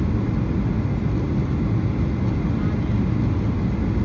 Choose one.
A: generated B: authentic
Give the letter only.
B